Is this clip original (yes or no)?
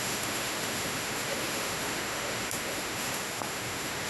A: no